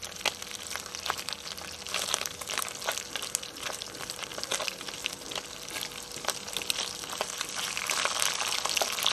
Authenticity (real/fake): real